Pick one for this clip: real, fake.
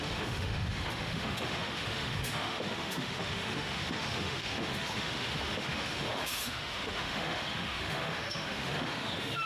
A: fake